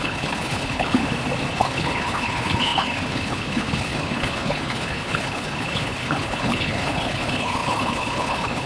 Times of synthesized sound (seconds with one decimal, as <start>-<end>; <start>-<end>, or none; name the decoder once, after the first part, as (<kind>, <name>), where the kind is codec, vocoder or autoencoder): 0.0-1.0 (codec, HILCodec); 1.5-8.7